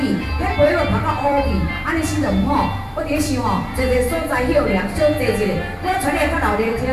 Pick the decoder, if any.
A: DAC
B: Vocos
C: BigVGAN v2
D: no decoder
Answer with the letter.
C